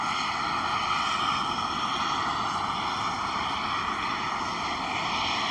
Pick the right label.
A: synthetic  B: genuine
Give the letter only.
B